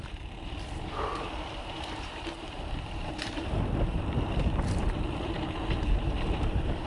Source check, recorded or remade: remade